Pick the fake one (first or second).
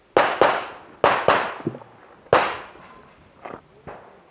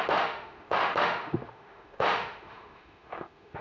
second